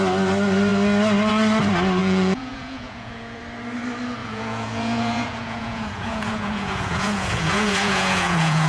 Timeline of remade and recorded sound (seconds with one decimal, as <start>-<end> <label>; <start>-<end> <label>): 0.0-2.0 recorded; 2.0-3.4 remade; 3.4-4.2 recorded; 4.2-8.7 remade